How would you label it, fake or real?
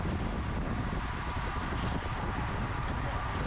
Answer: real